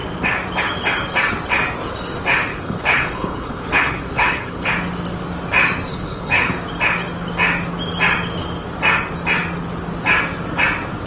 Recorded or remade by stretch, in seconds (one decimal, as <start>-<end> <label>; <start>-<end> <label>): 0.0-2.5 recorded; 2.5-4.7 remade; 4.7-5.9 recorded; 5.9-6.5 remade; 6.5-11.1 recorded